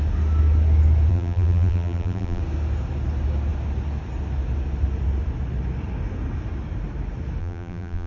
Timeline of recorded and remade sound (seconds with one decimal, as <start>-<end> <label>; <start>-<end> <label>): 0.0-1.1 recorded; 1.1-2.4 remade; 2.4-7.4 recorded; 7.4-8.1 remade